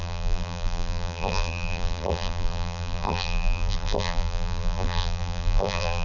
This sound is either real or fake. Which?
fake